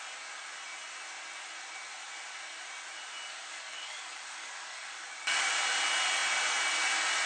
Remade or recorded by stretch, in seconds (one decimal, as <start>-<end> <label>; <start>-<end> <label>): 0.0-3.3 recorded; 3.3-5.5 remade; 5.5-7.3 recorded